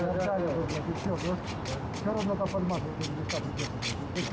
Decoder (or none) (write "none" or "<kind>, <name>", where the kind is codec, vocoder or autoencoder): none